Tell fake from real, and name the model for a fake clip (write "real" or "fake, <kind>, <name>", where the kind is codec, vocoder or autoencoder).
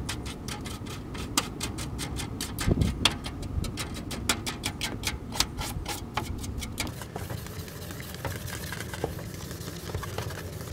real